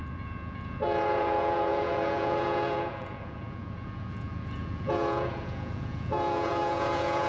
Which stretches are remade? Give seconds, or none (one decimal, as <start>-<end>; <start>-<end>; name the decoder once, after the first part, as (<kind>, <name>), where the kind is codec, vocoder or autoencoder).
0.0-7.3 (vocoder, Vocos)